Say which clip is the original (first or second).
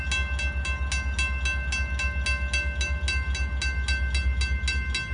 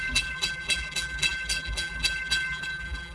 first